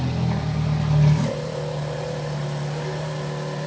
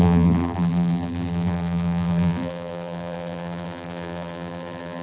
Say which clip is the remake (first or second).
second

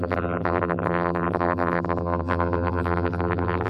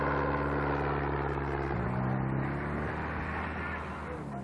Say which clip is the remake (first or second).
first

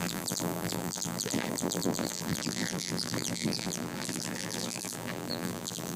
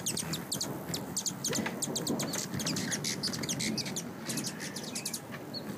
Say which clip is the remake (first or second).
first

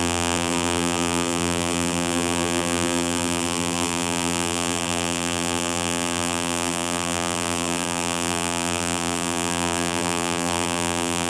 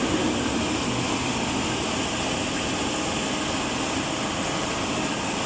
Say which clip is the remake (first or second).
first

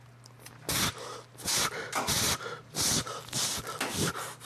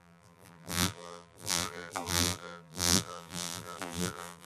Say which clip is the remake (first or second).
second